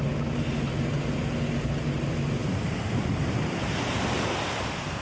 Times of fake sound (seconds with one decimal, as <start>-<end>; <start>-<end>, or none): 2.4-3.5